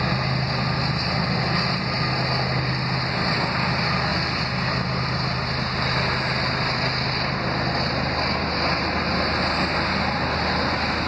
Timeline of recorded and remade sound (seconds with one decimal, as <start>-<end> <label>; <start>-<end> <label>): 0.0-11.1 recorded